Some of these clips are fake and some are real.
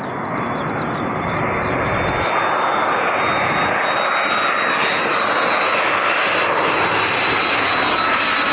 real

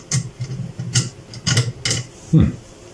real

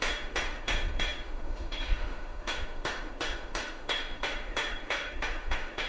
fake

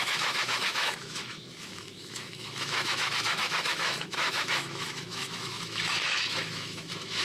fake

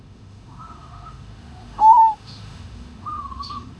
fake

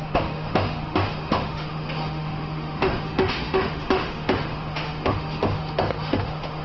fake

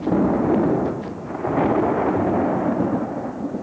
real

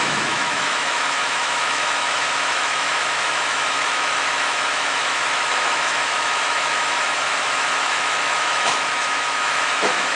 fake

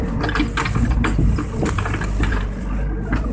real